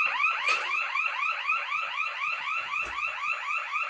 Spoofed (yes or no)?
no